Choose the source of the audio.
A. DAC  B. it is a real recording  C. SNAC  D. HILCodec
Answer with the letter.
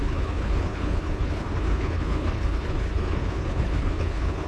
D